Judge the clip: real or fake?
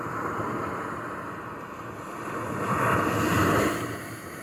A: real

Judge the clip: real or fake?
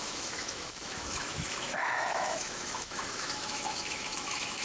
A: fake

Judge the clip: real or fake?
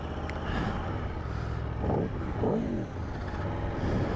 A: real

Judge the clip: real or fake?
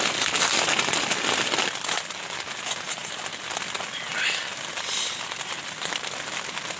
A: real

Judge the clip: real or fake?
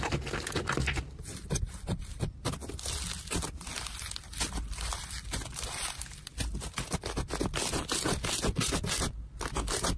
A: real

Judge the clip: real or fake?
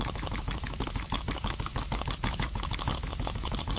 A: fake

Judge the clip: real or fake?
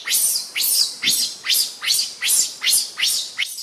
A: real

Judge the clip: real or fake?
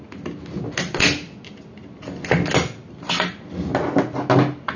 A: real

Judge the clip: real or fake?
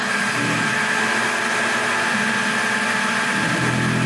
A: real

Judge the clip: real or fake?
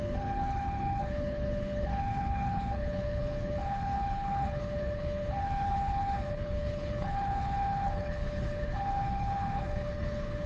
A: fake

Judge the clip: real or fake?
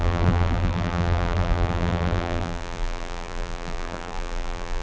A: fake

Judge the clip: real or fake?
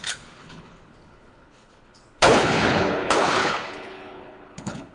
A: fake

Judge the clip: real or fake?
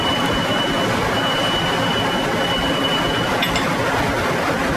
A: real